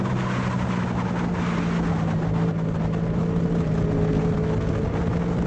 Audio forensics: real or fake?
real